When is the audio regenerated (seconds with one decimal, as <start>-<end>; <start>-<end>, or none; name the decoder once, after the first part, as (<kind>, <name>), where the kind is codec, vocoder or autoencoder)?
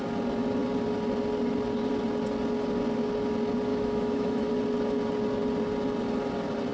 3.7-4.5 (autoencoder, DAC-VAE)